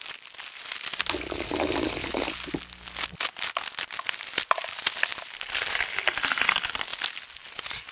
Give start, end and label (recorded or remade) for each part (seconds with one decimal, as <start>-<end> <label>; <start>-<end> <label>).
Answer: 0.0-5.1 recorded; 5.1-5.7 remade; 5.7-7.9 recorded